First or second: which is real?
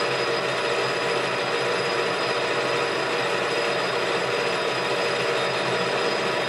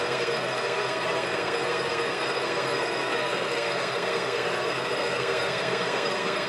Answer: first